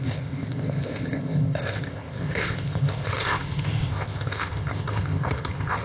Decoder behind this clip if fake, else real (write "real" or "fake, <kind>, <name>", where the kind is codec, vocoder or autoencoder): fake, codec, ZipCodec